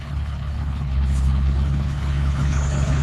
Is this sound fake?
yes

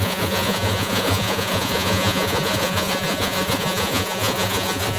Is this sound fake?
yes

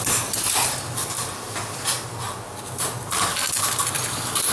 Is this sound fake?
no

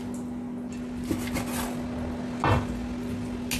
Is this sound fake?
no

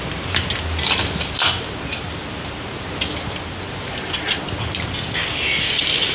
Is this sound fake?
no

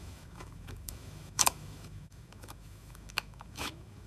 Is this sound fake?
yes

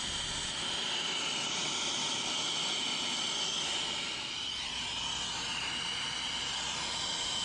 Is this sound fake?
no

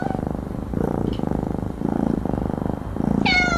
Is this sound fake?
no